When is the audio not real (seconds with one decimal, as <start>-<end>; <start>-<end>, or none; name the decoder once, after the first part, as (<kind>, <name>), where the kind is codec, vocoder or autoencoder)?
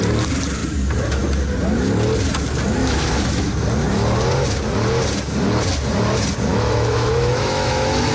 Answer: 2.8-3.5 (autoencoder, DAC-VAE); 6.5-8.1